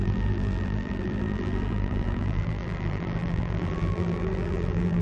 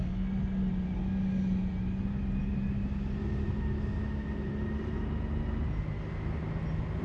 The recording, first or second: second